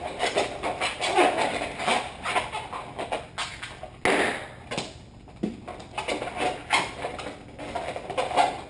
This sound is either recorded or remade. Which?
recorded